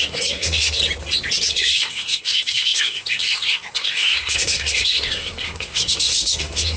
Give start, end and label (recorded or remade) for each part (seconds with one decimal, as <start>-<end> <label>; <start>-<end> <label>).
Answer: 0.0-0.8 remade; 0.8-1.5 recorded; 1.5-6.8 remade